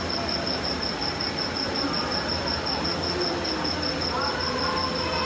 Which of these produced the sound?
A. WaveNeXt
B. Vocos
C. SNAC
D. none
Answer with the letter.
D